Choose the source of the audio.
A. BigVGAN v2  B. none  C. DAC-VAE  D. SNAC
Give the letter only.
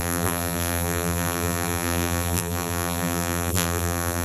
A